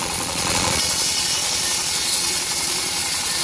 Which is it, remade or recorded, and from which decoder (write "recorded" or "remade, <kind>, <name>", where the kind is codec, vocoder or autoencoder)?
remade, vocoder, Vocos